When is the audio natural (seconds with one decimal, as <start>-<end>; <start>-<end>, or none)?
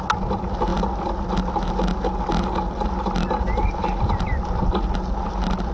0.0-5.7